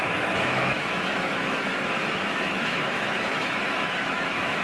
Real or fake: fake